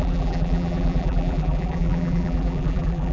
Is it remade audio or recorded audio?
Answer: remade